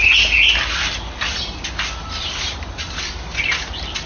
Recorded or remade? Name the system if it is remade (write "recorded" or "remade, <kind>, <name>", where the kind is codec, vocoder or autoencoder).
recorded